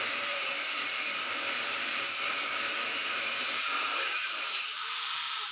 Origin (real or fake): fake